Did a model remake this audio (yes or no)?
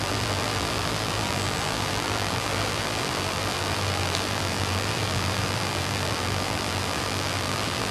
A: yes